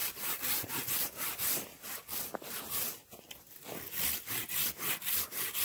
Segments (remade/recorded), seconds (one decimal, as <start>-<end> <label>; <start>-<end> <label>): 0.0-0.7 remade; 0.7-5.6 recorded